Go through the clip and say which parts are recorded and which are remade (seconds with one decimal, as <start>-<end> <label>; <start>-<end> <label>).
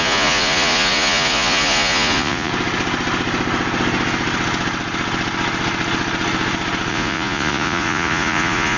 0.0-2.5 remade; 2.5-6.9 recorded; 6.9-8.8 remade